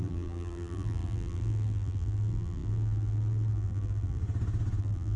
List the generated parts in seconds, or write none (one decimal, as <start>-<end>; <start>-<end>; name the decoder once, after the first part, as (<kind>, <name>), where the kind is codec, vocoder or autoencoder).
0.0-4.2 (vocoder, BigVGAN v2); 4.8-5.2